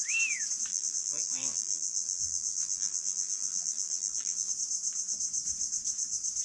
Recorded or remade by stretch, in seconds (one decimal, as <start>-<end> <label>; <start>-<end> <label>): 0.0-0.7 recorded; 0.7-4.5 remade; 4.5-6.4 recorded